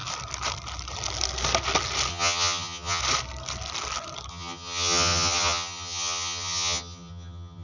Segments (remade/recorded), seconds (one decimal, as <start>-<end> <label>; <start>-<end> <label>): 0.0-2.1 recorded; 2.1-3.0 remade; 3.0-4.3 recorded; 4.3-7.6 remade